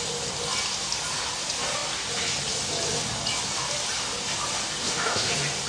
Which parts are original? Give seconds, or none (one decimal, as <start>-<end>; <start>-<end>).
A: 0.0-4.8; 5.3-5.7